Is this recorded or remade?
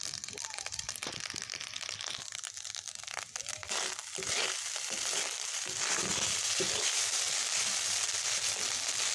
remade